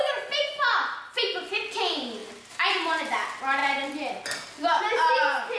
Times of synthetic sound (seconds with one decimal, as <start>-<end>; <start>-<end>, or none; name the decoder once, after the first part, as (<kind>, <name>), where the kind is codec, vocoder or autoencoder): none